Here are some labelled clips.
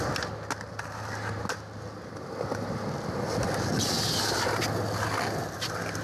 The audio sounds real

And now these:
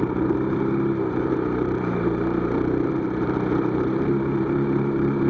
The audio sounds fake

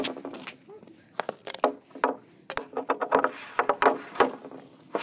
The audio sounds real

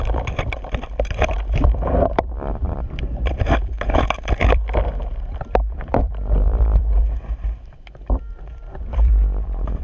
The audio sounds fake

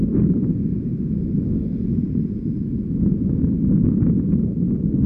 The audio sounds real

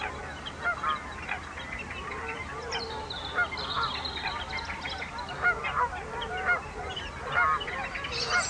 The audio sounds real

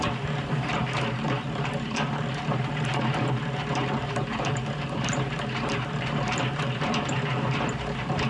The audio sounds fake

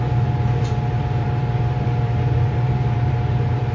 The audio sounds fake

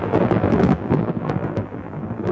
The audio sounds fake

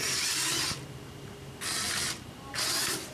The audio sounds real